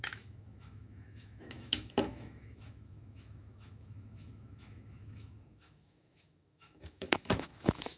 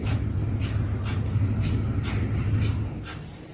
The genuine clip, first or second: second